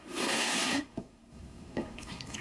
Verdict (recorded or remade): remade